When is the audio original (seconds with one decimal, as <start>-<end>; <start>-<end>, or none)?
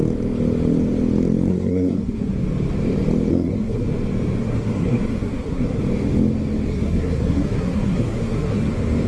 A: 0.0-1.5; 2.3-3.3; 3.9-4.4; 5.8-6.7; 8.7-9.1